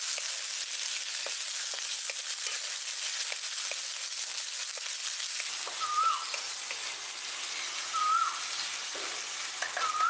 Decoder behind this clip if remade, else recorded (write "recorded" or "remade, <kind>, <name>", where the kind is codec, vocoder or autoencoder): recorded